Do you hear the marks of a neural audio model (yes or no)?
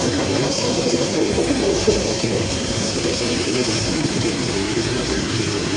yes